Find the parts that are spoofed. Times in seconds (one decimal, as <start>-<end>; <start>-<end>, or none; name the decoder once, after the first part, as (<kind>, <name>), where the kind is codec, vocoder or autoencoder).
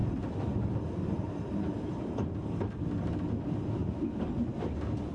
none